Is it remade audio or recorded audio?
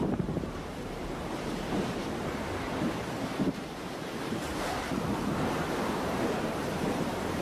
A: remade